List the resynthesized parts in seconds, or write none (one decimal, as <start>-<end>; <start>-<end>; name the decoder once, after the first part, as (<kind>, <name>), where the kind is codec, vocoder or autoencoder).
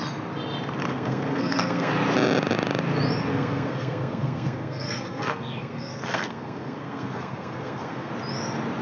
0.8-1.9 (codec, SNAC); 3.3-8.1